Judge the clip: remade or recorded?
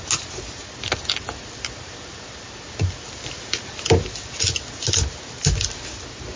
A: recorded